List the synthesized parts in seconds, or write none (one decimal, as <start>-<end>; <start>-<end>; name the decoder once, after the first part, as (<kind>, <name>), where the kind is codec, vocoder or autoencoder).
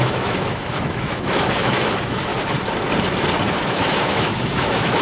0.0-2.3 (autoencoder, DAC-VAE); 3.5-5.0